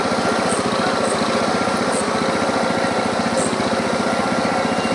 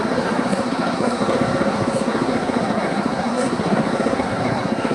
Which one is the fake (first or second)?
second